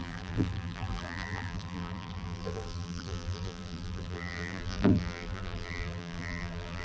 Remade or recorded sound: remade